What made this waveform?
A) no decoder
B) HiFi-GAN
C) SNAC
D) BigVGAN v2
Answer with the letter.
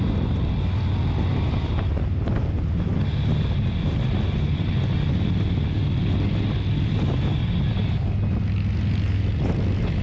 A